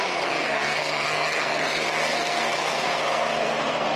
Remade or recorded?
remade